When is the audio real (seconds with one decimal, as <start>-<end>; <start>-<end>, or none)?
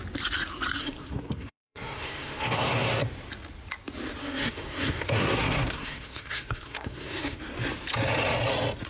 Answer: 0.0-0.8; 3.0-4.2; 7.4-8.9